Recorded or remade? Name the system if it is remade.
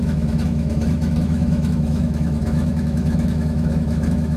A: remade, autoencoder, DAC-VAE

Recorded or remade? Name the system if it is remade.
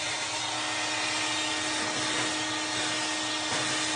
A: recorded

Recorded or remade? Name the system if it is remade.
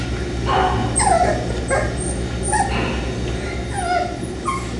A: recorded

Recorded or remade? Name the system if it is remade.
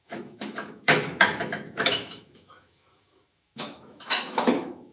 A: remade, autoencoder, DAC-VAE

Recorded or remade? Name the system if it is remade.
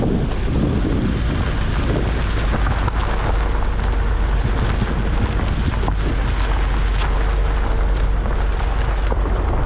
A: recorded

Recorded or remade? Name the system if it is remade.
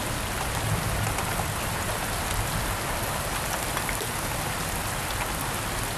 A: recorded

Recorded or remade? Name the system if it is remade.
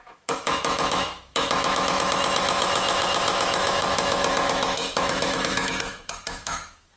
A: remade, autoencoder, DAC-VAE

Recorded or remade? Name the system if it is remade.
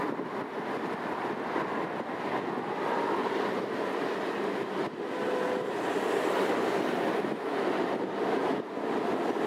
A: recorded